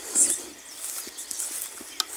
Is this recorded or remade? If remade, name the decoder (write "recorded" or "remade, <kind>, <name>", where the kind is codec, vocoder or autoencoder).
recorded